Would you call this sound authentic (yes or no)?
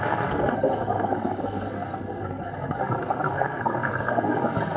no